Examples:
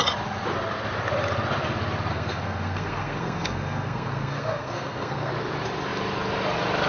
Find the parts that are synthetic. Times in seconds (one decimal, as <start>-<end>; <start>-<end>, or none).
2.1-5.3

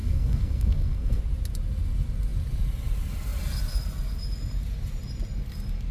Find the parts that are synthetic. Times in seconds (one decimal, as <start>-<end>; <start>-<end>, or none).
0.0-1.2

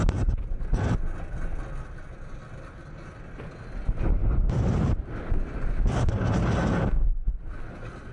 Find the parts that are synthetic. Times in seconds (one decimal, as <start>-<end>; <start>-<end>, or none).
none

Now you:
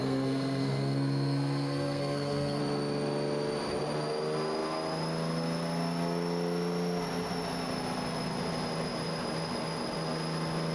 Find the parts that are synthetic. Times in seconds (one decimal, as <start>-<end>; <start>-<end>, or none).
0.0-2.6